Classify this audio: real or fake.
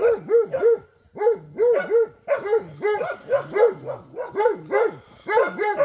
real